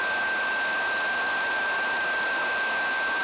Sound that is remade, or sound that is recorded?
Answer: recorded